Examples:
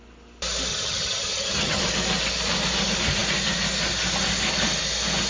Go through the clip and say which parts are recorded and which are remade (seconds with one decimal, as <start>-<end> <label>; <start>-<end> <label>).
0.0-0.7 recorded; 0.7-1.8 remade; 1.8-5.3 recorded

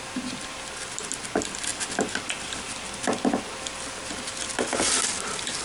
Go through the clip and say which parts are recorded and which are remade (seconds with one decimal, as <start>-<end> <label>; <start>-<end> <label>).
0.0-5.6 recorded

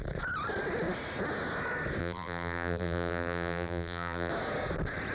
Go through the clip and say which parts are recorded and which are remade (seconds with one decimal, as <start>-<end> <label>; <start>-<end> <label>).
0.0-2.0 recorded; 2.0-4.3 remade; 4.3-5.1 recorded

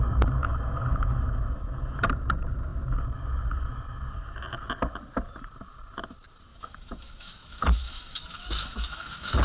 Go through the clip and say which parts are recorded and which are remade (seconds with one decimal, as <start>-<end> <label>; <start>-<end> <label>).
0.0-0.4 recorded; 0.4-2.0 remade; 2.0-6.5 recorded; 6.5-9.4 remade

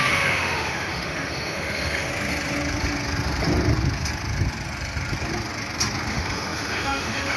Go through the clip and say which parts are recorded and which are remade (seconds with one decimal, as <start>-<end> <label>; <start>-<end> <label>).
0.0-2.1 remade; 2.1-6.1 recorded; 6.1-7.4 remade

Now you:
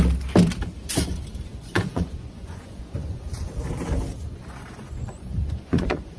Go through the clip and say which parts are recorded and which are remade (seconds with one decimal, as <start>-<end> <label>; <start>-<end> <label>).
0.0-1.5 recorded; 1.5-3.2 remade; 3.2-4.2 recorded; 4.2-6.2 remade

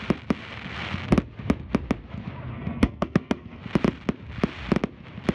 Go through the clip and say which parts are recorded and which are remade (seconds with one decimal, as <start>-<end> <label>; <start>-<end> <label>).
0.0-2.5 recorded; 2.5-3.6 remade; 3.6-5.3 recorded

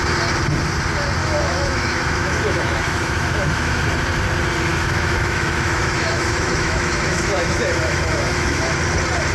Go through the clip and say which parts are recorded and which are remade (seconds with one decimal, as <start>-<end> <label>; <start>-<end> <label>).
0.0-1.2 recorded; 1.2-3.8 remade; 3.8-4.7 recorded; 4.7-8.7 remade; 8.7-9.3 recorded